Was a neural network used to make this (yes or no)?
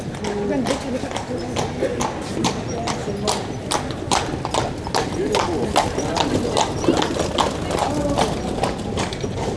no